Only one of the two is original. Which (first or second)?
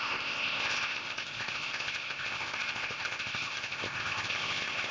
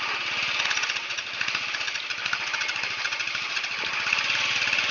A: second